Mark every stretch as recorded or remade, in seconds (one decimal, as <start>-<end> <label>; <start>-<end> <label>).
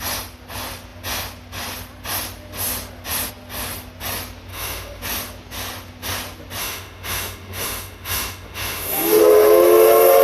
0.0-4.5 recorded; 4.5-5.0 remade; 5.0-6.6 recorded; 6.6-9.2 remade; 9.2-10.2 recorded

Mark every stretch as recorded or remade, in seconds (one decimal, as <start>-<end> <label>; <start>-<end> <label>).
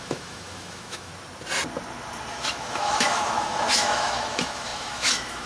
0.0-1.1 remade; 1.1-2.3 recorded; 2.3-5.5 remade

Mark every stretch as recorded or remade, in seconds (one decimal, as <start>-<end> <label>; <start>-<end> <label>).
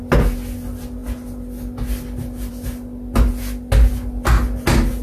0.0-5.0 recorded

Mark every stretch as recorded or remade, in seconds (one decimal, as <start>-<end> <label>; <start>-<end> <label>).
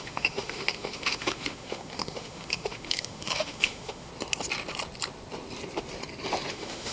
0.0-4.1 remade; 4.1-6.5 recorded; 6.5-6.9 remade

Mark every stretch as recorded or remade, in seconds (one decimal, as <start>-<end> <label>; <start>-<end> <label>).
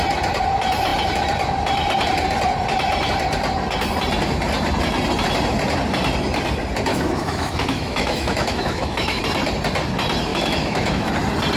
0.0-6.9 recorded; 6.9-9.2 remade; 9.2-10.3 recorded; 10.3-11.1 remade; 11.1-11.6 recorded